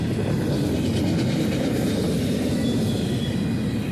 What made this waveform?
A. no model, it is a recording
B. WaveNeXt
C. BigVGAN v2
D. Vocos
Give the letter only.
A